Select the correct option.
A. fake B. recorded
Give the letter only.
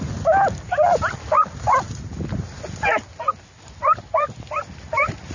B